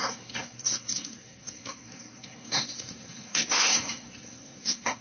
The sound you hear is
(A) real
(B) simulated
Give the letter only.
B